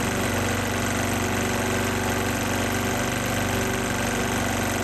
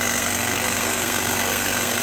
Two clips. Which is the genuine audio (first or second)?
first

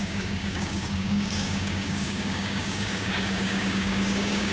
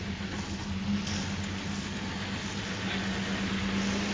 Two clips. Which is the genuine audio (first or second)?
second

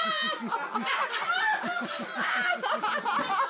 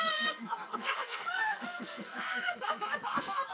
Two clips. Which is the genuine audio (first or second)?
first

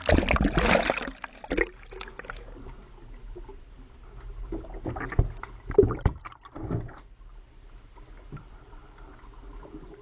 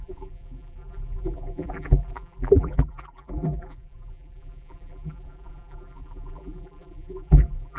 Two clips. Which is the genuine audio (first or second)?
first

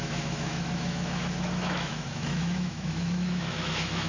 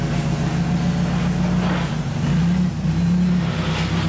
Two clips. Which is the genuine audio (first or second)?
second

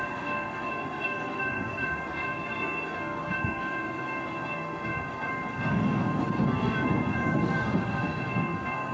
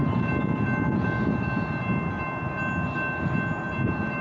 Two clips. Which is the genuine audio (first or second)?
second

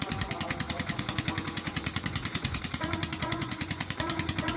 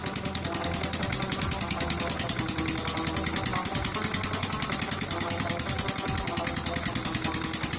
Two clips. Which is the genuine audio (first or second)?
second